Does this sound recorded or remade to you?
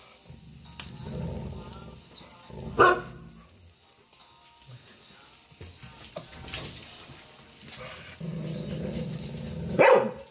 recorded